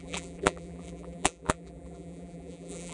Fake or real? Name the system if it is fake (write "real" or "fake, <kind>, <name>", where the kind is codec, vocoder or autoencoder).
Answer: fake, vocoder, BigVGAN v2